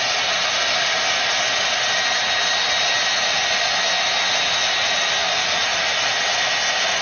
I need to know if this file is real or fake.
real